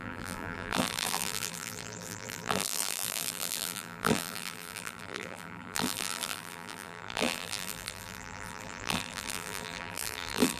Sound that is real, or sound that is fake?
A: fake